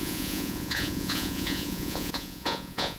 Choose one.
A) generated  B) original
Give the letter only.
A